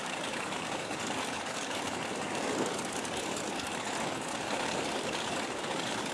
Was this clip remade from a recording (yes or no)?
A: yes